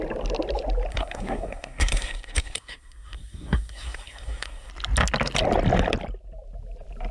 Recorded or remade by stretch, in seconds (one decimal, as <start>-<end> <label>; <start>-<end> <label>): 0.0-0.9 recorded; 0.9-4.7 remade; 4.7-7.1 recorded